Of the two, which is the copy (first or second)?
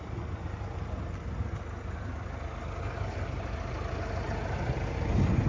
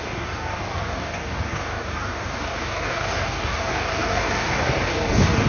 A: second